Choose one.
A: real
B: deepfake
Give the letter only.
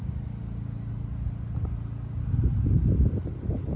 A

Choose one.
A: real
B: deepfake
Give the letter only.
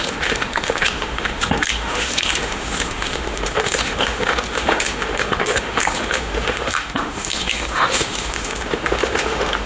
B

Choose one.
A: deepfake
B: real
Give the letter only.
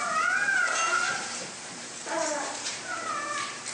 A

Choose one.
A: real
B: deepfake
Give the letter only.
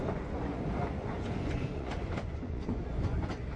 B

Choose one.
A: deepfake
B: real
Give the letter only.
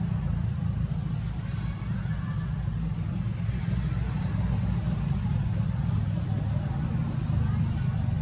B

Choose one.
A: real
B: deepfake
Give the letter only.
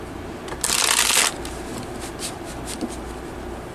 A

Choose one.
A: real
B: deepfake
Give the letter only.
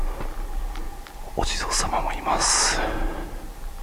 A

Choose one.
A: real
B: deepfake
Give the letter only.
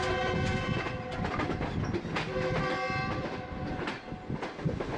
A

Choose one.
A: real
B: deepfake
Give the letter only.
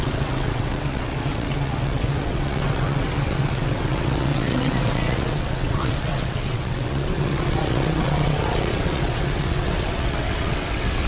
B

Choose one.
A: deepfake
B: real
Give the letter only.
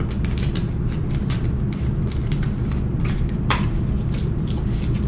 A